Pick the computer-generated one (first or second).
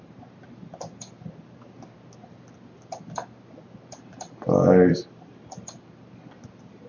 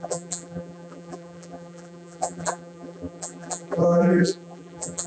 second